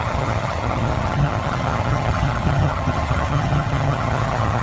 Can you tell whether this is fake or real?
fake